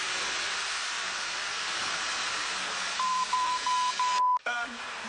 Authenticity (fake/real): real